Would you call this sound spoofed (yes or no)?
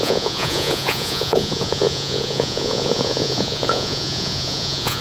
yes